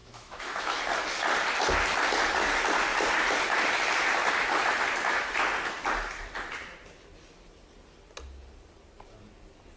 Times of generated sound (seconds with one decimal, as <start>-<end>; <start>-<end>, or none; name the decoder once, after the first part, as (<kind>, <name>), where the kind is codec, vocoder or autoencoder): 0.0-0.8 (autoencoder, DAC-VAE)